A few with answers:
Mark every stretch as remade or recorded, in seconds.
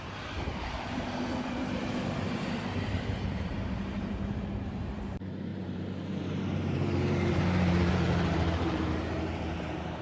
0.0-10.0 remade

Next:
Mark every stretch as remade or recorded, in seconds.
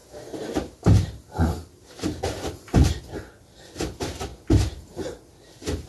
0.0-3.0 remade; 3.0-4.3 recorded; 4.3-5.3 remade; 5.3-5.9 recorded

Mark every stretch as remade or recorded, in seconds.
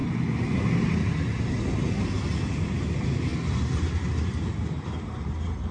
0.0-5.7 recorded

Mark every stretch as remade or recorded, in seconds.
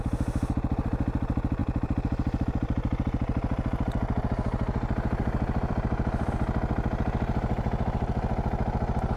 0.0-1.6 recorded; 1.6-6.3 remade; 6.3-9.2 recorded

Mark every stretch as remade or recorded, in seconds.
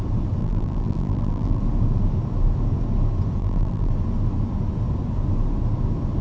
0.0-0.4 recorded; 0.4-1.6 remade; 1.6-3.4 recorded; 3.4-3.9 remade; 3.9-6.2 recorded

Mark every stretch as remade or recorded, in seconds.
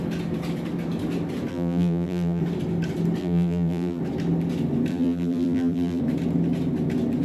0.0-1.5 recorded; 1.5-2.4 remade; 2.4-3.2 recorded; 3.2-4.0 remade; 4.0-4.9 recorded; 4.9-6.0 remade; 6.0-7.2 recorded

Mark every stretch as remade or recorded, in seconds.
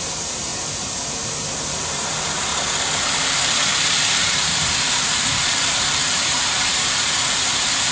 0.0-0.5 remade; 0.5-1.9 recorded; 1.9-2.5 remade; 2.5-3.0 recorded; 3.0-7.9 remade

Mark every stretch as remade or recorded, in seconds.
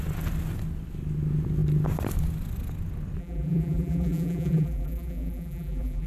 0.0-3.2 recorded; 3.2-6.1 remade